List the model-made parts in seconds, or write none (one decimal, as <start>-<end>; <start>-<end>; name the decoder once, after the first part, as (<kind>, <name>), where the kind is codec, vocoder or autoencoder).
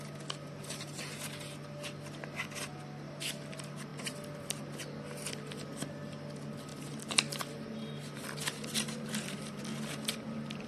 3.9-4.8 (vocoder, BigVGAN v2); 6.7-9.6